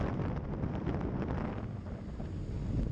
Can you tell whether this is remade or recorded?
recorded